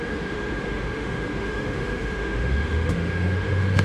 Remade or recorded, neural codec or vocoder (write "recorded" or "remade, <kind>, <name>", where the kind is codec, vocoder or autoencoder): remade, autoencoder, DAC-VAE